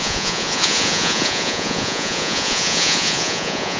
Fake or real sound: fake